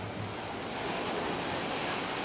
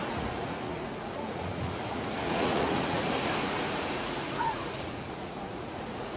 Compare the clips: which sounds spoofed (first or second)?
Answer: second